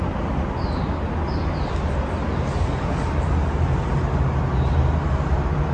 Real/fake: real